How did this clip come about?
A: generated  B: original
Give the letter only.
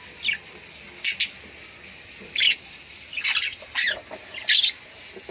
B